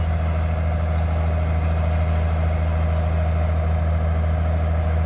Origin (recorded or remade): recorded